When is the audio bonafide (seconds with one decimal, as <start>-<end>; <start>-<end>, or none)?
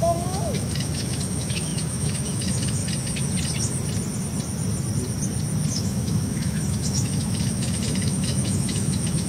2.8-5.7